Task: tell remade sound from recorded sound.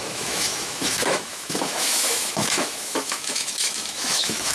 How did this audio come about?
remade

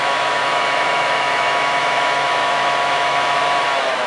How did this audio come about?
remade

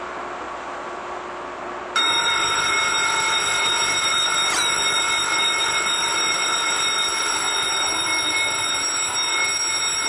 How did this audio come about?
recorded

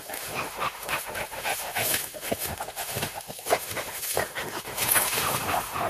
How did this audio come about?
remade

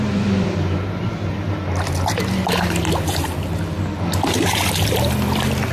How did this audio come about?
recorded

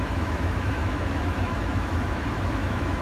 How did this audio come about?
remade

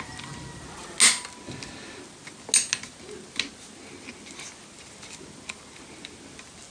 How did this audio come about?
recorded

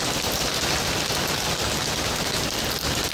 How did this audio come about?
recorded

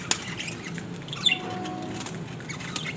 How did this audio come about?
recorded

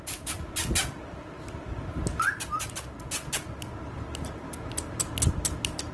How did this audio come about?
recorded